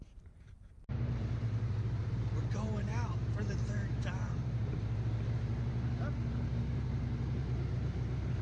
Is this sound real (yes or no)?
no